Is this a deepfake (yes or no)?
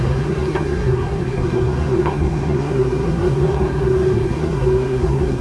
yes